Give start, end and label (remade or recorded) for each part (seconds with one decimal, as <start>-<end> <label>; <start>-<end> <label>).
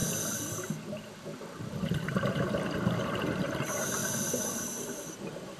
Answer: 0.0-3.4 recorded; 3.4-4.0 remade; 4.0-4.6 recorded; 4.6-5.6 remade